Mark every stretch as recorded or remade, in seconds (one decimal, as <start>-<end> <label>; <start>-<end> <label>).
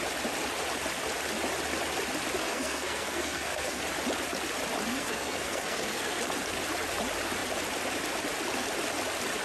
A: 0.0-2.4 recorded; 2.4-3.8 remade; 3.8-4.9 recorded; 4.9-6.2 remade; 6.2-9.4 recorded